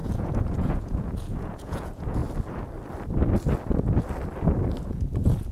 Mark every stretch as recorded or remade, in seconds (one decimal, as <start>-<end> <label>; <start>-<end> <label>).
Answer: 0.0-2.2 remade; 2.2-4.8 recorded; 4.8-5.5 remade